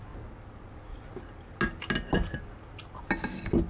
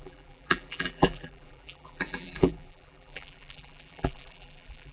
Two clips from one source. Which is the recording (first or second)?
first